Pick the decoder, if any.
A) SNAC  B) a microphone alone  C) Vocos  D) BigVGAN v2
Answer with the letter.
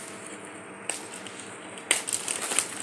B